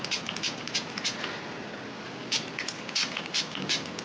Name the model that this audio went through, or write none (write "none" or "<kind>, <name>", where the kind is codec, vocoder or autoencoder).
none